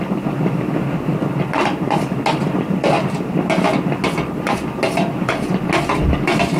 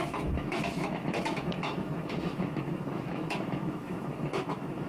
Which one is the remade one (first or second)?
second